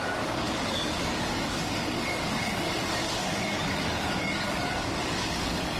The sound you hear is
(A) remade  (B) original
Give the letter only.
A